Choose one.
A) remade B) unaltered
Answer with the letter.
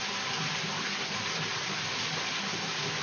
B